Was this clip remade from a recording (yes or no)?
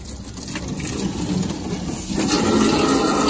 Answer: no